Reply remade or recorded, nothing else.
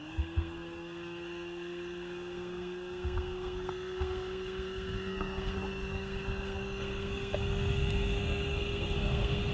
remade